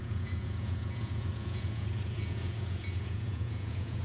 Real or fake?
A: fake